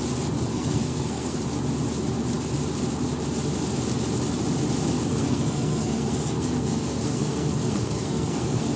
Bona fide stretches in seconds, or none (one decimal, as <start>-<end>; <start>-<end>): 0.0-0.5; 1.4-5.1